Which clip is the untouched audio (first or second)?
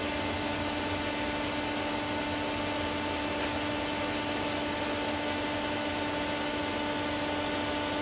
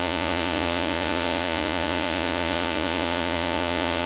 first